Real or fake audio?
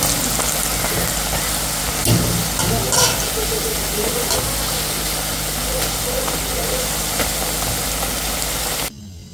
real